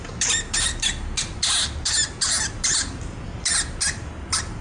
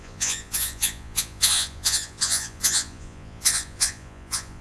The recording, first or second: first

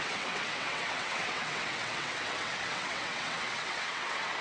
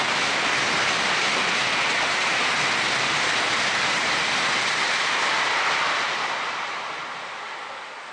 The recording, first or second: second